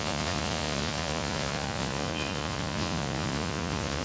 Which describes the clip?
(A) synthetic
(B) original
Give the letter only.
A